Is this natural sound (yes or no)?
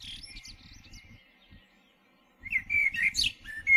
yes